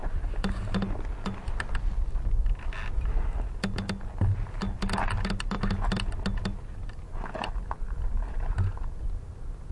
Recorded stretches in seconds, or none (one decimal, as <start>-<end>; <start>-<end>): 0.0-9.7